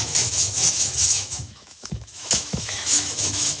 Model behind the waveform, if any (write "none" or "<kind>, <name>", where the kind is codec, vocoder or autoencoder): autoencoder, DAC-VAE